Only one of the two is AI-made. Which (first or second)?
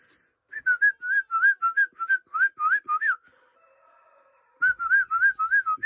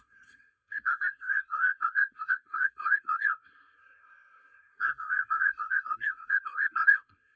second